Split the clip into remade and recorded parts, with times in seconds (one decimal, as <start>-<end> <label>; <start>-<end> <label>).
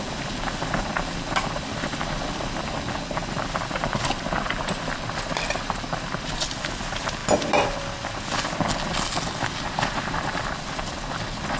0.0-11.6 recorded